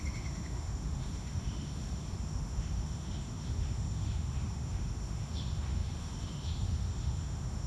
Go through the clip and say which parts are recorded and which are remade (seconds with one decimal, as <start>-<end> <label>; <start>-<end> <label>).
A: 0.0-7.7 remade